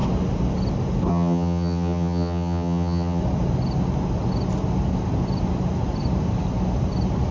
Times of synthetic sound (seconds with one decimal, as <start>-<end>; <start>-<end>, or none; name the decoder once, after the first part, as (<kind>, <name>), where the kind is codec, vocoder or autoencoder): 1.1-3.2 (vocoder, HiFi-GAN)